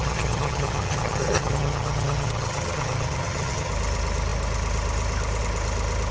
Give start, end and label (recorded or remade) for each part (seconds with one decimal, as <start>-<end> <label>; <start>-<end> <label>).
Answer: 0.0-3.7 remade; 3.7-6.1 recorded